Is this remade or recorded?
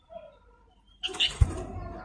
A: remade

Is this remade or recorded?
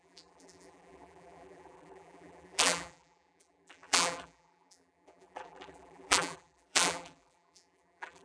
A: remade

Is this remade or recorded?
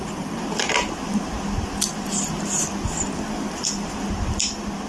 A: remade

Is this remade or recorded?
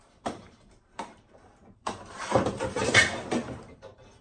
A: remade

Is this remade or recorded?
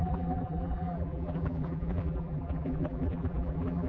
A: remade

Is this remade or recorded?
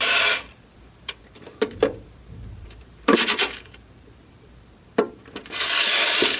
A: remade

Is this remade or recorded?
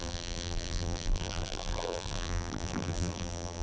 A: remade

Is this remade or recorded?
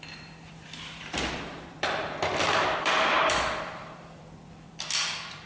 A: remade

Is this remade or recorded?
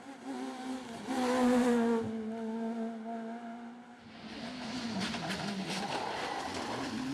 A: recorded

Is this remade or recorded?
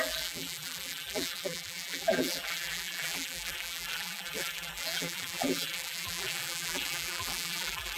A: remade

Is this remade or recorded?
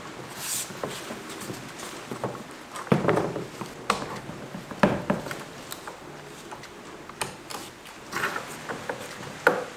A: recorded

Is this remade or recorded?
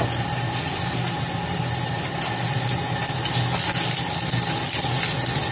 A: recorded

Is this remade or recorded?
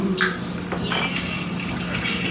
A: recorded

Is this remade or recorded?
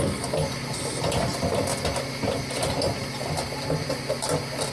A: recorded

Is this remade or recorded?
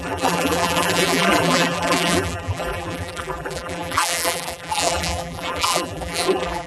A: remade